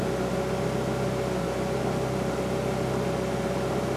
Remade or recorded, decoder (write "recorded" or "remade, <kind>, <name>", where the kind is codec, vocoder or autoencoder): recorded